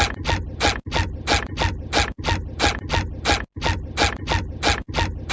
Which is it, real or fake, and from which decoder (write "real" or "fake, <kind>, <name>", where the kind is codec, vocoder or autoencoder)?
real